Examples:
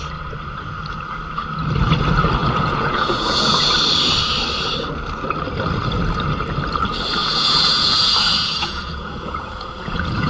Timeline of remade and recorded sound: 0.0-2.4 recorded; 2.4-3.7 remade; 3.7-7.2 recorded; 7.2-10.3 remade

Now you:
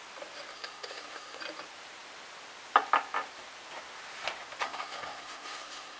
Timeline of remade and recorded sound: 0.0-0.5 recorded; 0.5-1.4 remade; 1.4-4.6 recorded; 4.6-6.0 remade